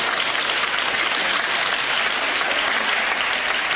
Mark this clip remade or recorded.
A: recorded